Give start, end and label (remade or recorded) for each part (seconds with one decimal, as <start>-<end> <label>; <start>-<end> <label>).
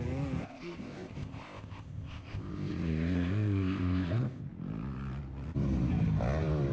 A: 0.0-0.4 recorded; 0.4-4.4 remade; 4.4-6.7 recorded